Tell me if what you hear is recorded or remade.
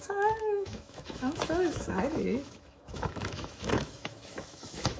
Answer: remade